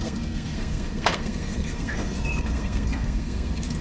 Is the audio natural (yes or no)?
no